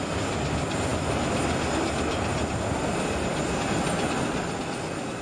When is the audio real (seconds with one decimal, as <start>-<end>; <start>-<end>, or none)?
0.0-5.2